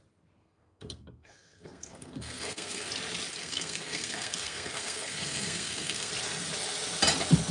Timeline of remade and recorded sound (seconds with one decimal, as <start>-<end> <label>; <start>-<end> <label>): 0.0-0.4 recorded; 0.4-2.9 remade; 2.9-3.4 recorded; 3.4-6.1 remade; 6.1-7.5 recorded